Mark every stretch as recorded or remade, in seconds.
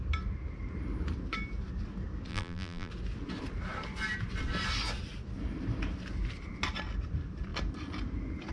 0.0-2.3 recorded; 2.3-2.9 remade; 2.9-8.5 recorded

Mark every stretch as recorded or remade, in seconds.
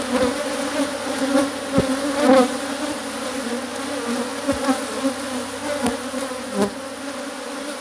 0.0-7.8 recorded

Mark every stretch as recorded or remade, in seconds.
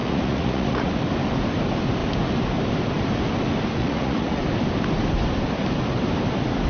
0.0-1.0 remade; 1.0-3.8 recorded; 3.8-4.4 remade; 4.4-6.7 recorded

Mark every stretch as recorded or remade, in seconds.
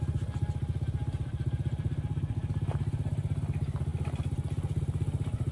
0.0-5.5 recorded